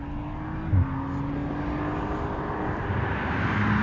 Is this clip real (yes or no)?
yes